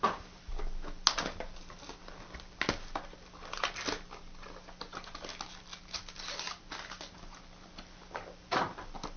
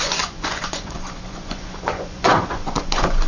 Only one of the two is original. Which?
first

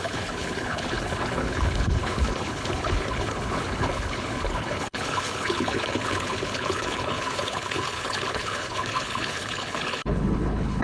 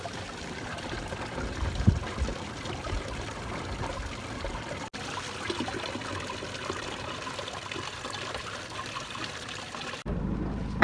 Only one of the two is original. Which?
second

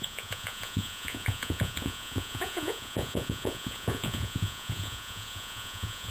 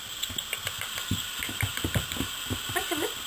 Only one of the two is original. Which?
second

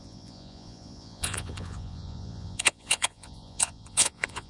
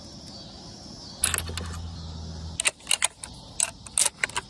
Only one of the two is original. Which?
second